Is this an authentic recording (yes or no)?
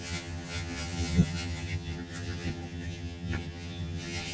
no